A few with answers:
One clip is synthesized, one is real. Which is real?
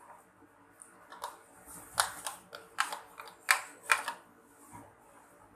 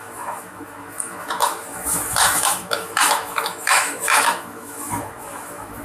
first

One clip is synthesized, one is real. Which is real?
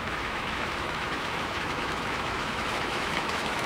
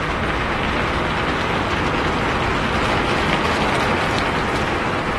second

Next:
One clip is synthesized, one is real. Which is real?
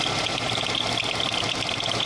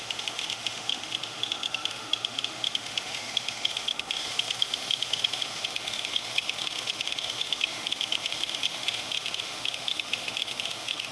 first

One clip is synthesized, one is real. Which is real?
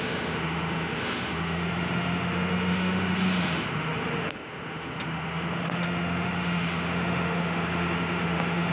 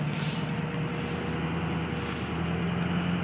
second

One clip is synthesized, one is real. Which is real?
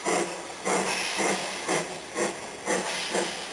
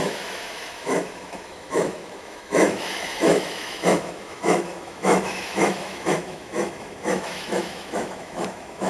first